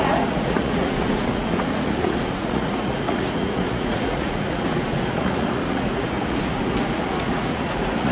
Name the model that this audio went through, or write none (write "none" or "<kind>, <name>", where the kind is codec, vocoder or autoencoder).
vocoder, Vocos